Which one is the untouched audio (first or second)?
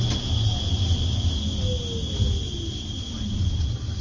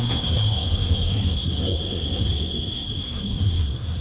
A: first